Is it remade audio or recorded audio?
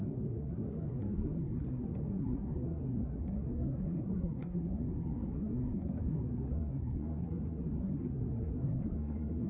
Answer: remade